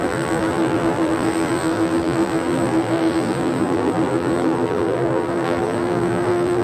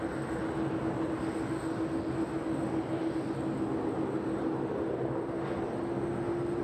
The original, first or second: second